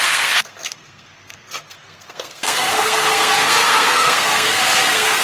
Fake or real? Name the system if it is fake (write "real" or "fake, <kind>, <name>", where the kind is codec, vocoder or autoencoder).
fake, codec, SNAC